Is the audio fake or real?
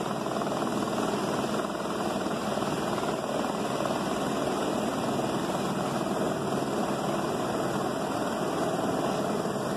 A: real